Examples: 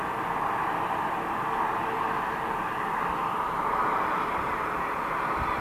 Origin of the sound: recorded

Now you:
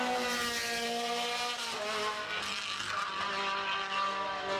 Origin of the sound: recorded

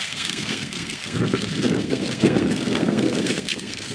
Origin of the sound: remade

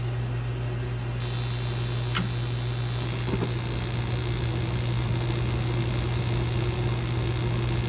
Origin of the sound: recorded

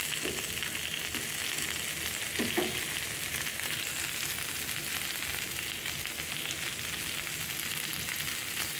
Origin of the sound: recorded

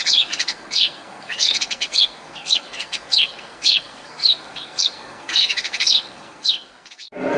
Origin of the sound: remade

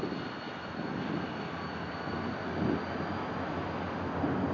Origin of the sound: recorded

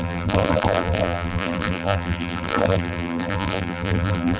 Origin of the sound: remade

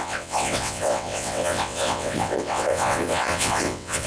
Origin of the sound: remade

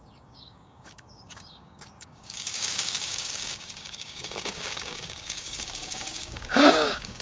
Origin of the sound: remade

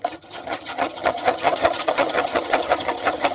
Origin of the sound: remade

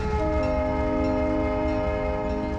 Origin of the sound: recorded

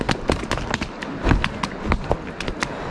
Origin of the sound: recorded